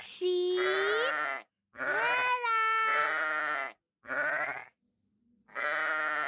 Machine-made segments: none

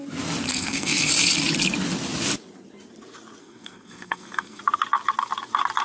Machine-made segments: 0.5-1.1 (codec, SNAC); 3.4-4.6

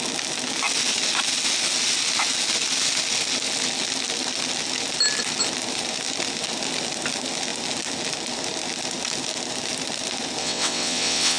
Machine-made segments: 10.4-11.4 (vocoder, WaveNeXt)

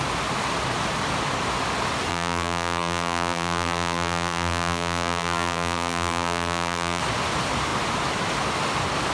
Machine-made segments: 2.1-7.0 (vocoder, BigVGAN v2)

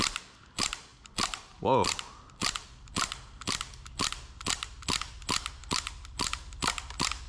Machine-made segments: none